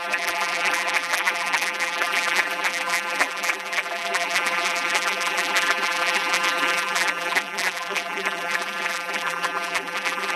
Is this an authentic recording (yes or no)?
no